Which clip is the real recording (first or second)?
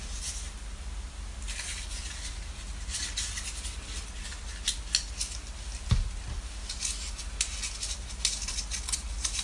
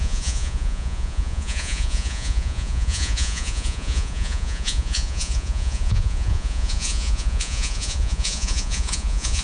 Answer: first